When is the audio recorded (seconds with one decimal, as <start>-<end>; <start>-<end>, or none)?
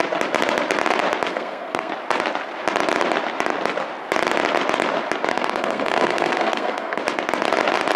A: 0.0-1.3; 1.9-5.3; 7.0-8.0